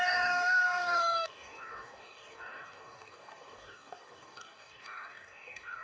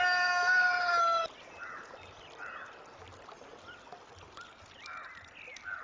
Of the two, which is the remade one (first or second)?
first